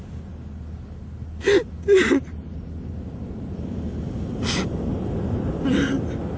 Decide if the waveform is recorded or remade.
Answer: recorded